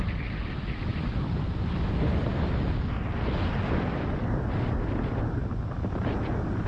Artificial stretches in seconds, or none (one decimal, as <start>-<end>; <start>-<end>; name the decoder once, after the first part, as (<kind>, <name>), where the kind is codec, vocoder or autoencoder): none